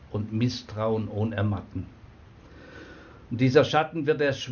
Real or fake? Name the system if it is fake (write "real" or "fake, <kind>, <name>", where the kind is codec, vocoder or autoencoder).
real